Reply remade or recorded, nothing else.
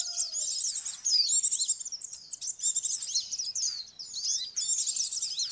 recorded